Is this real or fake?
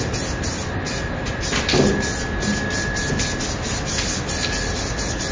real